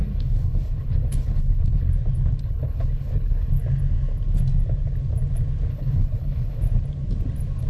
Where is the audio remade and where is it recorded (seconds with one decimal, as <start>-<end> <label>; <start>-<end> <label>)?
0.0-1.9 remade; 1.9-2.4 recorded; 2.4-3.5 remade; 3.5-5.7 recorded; 5.7-6.6 remade; 6.6-7.7 recorded